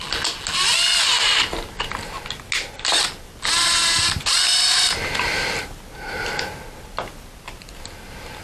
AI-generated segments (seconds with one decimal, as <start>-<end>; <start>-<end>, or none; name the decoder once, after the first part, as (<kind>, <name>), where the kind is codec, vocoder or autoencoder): none